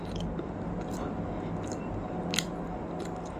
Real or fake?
real